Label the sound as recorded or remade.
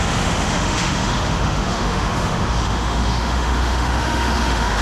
remade